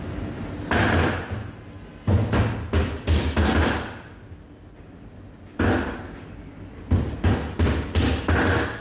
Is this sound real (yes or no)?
yes